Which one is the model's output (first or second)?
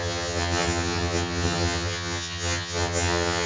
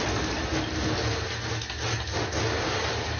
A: first